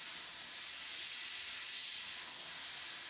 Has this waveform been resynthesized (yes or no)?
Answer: no